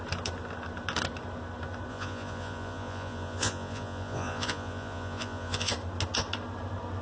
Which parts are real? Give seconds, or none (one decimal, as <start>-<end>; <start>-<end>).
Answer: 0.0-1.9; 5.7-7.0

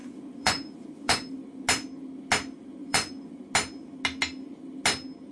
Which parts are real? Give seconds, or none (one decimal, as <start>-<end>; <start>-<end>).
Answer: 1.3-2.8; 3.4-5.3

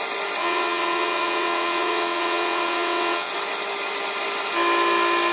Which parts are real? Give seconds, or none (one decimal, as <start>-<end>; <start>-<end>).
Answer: 0.0-0.4; 3.3-5.3

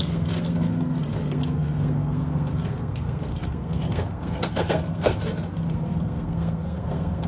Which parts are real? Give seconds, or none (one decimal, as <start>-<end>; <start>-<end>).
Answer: 5.2-5.7